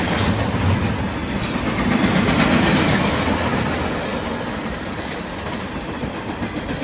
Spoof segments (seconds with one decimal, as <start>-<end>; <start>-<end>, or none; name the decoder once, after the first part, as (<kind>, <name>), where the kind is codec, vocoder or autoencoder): 1.2-2.3 (vocoder, BigVGAN v2); 4.1-6.8

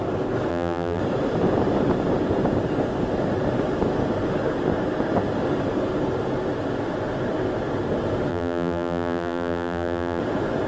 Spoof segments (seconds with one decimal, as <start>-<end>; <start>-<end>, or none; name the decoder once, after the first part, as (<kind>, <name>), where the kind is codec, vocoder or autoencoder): 0.5-1.0 (vocoder, BigVGAN v2); 8.3-10.2

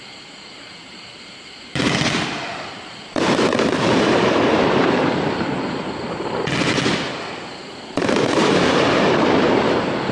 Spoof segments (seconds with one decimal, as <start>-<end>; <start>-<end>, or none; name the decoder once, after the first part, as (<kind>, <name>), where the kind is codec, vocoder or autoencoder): 0.0-5.5 (vocoder, BigVGAN v2); 7.0-10.1

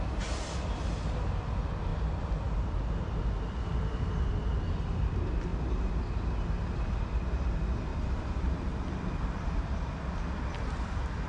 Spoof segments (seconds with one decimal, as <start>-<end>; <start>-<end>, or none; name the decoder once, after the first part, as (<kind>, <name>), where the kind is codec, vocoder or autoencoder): 7.9-10.1 (vocoder, BigVGAN v2)